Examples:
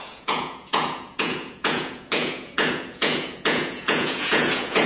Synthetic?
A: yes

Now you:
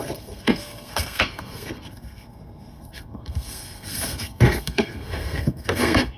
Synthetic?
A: yes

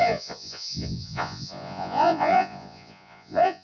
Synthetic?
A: yes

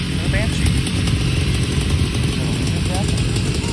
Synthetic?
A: no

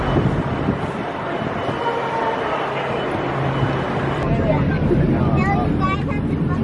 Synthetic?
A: no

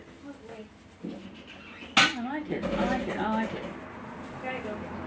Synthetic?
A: no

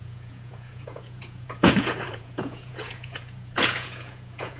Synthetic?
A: yes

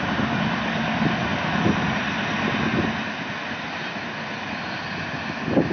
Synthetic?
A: no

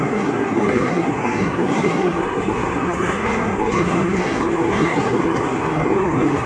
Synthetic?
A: yes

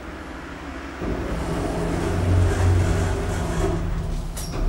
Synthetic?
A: no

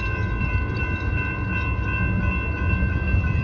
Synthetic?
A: no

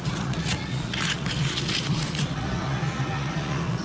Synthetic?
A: yes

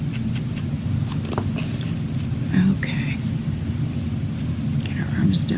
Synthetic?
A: no